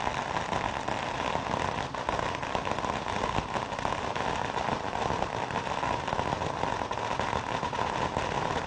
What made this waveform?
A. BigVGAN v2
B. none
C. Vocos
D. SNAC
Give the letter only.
B